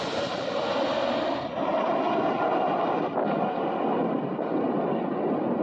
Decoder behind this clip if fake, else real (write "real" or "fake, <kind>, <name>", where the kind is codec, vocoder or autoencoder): real